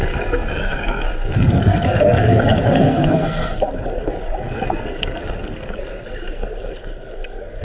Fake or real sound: fake